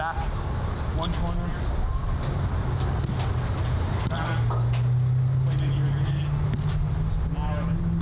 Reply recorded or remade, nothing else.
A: recorded